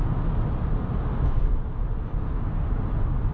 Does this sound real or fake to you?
real